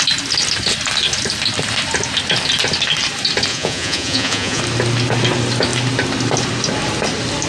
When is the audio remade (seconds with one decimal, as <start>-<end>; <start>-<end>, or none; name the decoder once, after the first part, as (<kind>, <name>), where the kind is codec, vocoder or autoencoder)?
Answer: 3.5-4.6 (vocoder, Vocos)